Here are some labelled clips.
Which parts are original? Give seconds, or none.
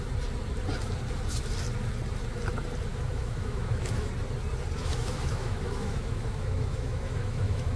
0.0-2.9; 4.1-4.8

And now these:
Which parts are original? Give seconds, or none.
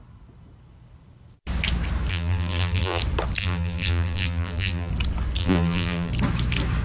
0.0-2.1; 3.0-3.4; 4.9-5.4; 6.1-6.8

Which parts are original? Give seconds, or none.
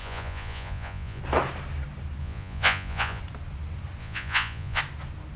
1.2-2.2; 3.2-4.0; 4.8-5.4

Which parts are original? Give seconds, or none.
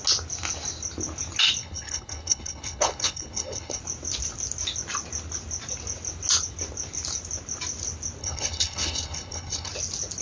0.0-1.6; 3.8-8.2; 9.7-10.2